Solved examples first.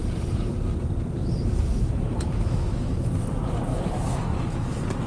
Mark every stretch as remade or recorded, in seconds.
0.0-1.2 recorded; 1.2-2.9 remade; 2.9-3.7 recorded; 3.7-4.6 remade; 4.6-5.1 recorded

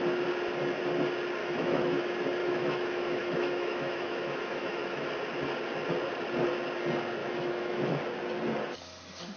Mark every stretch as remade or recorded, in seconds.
0.0-1.4 recorded; 1.4-2.0 remade; 2.0-2.4 recorded; 2.4-5.1 remade; 5.1-7.2 recorded; 7.2-8.0 remade; 8.0-9.4 recorded

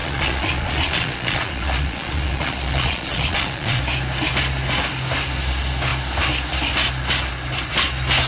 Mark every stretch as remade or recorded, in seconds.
0.0-3.8 remade; 3.8-8.3 recorded

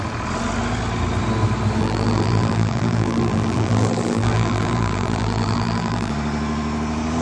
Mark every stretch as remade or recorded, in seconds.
0.0-1.8 recorded; 1.8-6.1 remade; 6.1-7.2 recorded